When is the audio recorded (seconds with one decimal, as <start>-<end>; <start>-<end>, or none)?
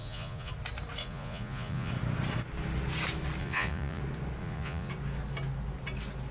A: 0.5-1.0; 1.9-3.4; 4.0-4.4; 4.9-6.3